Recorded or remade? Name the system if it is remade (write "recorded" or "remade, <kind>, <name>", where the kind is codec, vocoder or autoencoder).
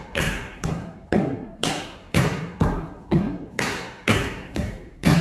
remade, codec, SNAC